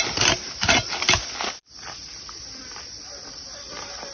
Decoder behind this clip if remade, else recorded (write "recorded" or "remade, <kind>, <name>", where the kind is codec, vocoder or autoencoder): recorded